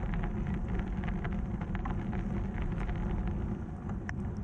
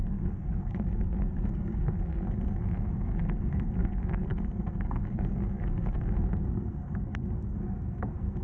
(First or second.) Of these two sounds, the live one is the first